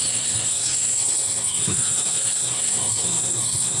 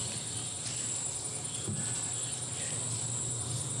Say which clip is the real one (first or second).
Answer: second